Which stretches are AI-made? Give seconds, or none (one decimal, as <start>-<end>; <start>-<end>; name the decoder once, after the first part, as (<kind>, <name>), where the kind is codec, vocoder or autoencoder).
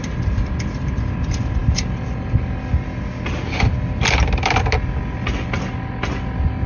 none